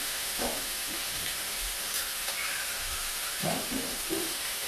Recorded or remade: remade